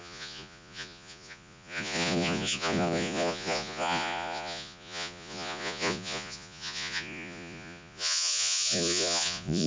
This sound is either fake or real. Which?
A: fake